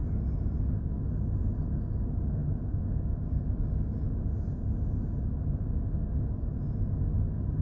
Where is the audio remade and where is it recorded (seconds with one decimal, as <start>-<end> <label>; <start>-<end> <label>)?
0.0-7.6 recorded